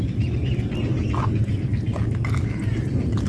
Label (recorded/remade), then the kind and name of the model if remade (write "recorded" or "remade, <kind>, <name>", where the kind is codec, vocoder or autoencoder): recorded